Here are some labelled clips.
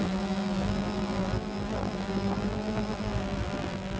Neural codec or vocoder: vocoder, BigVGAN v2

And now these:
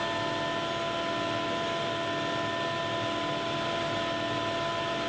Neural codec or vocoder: none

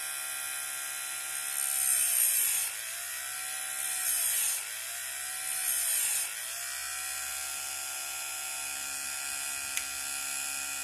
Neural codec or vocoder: none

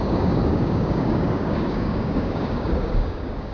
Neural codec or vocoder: codec, DAC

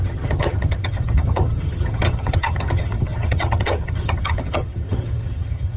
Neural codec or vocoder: vocoder, HiFi-GAN